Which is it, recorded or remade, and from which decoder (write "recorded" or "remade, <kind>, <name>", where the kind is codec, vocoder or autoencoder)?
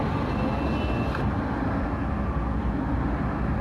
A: recorded